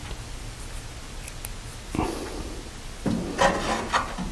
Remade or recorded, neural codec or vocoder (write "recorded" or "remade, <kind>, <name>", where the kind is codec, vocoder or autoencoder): recorded